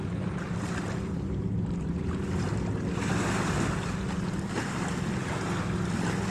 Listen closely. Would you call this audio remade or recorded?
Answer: recorded